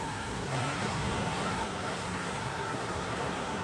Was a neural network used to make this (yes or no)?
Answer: yes